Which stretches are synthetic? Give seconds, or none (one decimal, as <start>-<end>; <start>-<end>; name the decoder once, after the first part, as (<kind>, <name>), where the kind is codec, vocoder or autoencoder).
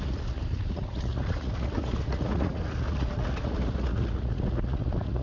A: 0.0-5.2 (vocoder, Vocos)